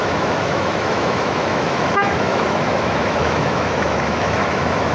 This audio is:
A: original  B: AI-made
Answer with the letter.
B